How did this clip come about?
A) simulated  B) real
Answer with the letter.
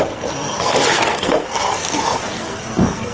A